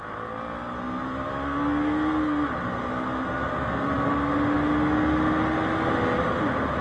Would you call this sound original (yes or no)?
yes